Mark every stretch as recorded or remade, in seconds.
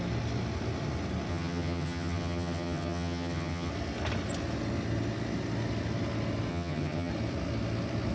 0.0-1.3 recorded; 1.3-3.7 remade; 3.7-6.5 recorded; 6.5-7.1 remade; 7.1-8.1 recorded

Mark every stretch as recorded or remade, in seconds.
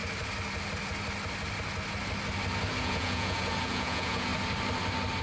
0.0-2.8 recorded; 2.8-4.3 remade; 4.3-5.2 recorded